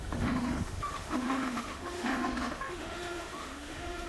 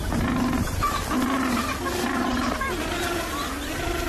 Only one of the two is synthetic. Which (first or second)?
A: first